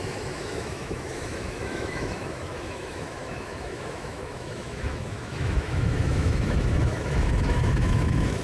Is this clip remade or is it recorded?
remade